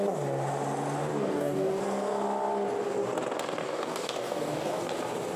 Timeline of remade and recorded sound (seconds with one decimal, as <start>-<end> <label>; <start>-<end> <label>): 0.0-1.1 recorded; 1.1-1.8 remade; 1.8-3.6 recorded; 3.6-4.8 remade; 4.8-5.4 recorded